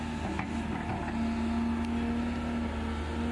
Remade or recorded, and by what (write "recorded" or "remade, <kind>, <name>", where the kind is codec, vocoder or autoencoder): recorded